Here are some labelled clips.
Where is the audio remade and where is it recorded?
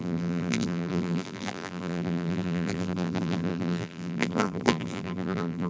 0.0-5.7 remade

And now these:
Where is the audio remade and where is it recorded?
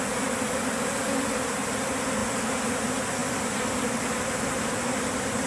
0.0-5.5 recorded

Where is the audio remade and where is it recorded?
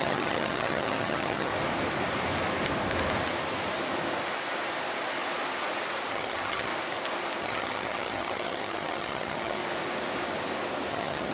0.0-1.5 remade; 1.5-6.1 recorded; 6.1-6.7 remade; 6.7-7.4 recorded; 7.4-9.6 remade; 9.6-10.9 recorded; 10.9-11.3 remade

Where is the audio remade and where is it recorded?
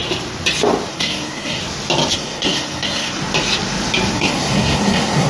0.0-0.9 recorded; 0.9-1.6 remade; 1.6-2.1 recorded; 2.1-3.2 remade; 3.2-4.1 recorded; 4.1-5.3 remade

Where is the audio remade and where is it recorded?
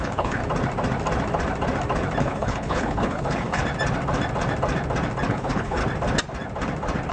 0.0-0.4 remade; 0.4-2.2 recorded; 2.2-3.6 remade; 3.6-5.3 recorded; 5.3-5.8 remade; 5.8-7.1 recorded